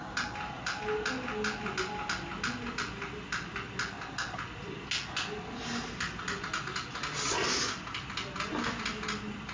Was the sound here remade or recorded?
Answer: recorded